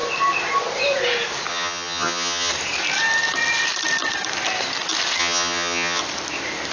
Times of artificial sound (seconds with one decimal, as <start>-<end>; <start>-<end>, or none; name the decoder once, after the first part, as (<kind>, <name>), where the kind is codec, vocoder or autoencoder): 1.5-2.5 (vocoder, HiFi-GAN); 5.2-6.0